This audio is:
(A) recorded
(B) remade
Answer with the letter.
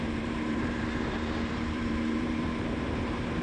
B